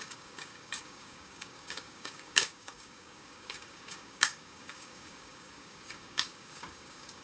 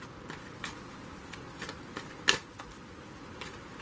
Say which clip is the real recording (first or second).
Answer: second